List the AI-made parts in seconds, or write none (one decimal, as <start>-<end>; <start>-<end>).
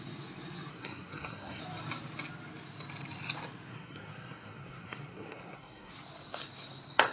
0.7-1.6; 3.7-5.9